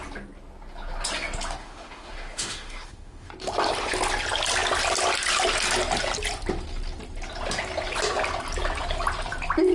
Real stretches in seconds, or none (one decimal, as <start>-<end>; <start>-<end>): 0.0-1.6; 3.3-9.7